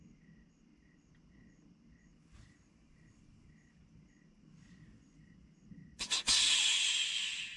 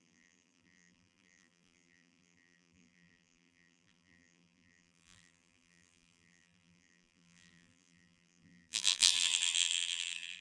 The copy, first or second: second